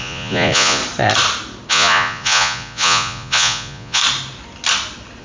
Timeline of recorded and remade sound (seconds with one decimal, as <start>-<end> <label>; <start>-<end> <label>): 0.0-0.8 remade; 0.8-1.7 recorded; 1.7-4.0 remade; 4.0-5.2 recorded